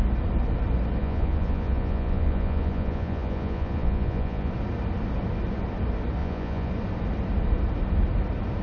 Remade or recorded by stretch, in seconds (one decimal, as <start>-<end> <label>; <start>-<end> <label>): 0.0-1.0 recorded; 1.0-4.5 remade; 4.5-6.2 recorded; 6.2-6.7 remade; 6.7-8.6 recorded

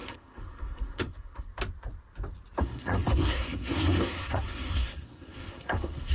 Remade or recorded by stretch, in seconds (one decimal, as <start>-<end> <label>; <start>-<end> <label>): 0.0-1.5 remade; 1.5-2.6 recorded; 2.6-6.1 remade

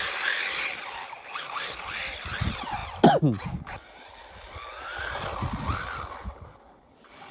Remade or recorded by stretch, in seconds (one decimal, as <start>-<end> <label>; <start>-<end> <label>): 0.0-7.3 recorded